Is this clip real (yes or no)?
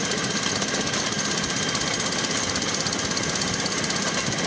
yes